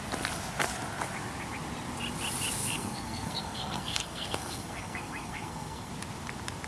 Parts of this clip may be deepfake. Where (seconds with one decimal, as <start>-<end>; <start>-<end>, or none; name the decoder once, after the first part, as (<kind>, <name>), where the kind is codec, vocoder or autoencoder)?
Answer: 2.6-5.9 (codec, SNAC)